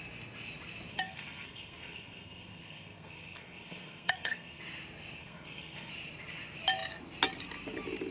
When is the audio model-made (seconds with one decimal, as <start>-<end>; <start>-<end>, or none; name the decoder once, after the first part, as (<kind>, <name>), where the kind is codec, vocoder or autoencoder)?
0.9-4.6 (codec, SNAC); 5.2-5.9